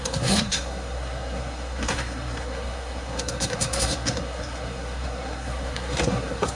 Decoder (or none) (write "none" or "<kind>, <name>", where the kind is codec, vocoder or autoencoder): codec, SNAC